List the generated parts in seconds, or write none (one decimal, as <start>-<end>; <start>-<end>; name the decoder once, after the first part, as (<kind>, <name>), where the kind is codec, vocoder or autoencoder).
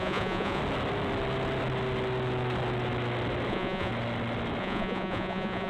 0.0-0.6 (vocoder, Vocos); 3.5-3.9; 4.6-5.7